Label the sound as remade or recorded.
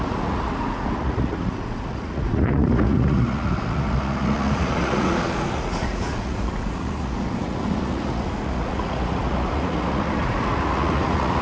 remade